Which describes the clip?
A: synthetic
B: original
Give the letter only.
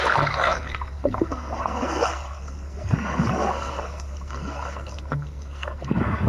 A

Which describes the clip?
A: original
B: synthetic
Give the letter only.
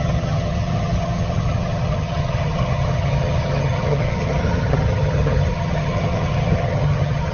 B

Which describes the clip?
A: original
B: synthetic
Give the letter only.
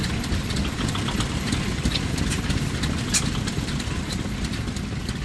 A